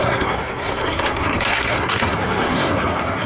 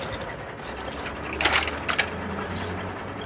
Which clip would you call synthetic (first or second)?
first